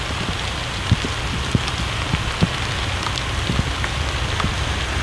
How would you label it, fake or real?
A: real